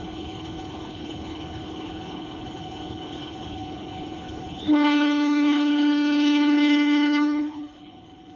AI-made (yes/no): yes